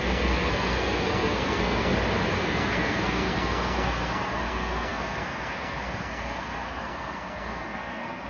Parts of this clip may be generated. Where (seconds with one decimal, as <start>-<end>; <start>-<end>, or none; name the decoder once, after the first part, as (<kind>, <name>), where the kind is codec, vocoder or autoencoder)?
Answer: 0.0-1.9 (codec, SNAC); 2.4-8.3